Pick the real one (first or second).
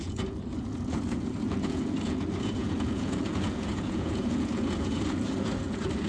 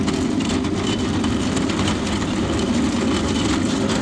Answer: second